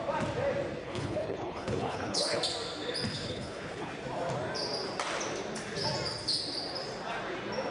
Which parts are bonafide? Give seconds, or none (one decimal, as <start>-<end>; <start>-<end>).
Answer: 0.0-0.8; 2.4-3.1; 3.9-7.7